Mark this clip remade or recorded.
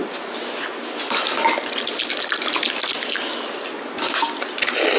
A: recorded